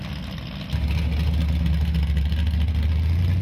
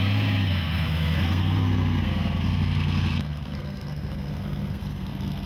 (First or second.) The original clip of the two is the first